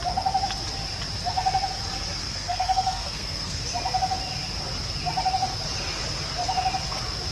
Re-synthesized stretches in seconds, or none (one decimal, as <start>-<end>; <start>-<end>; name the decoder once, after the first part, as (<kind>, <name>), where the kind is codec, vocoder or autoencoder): 2.2-3.6 (codec, SNAC)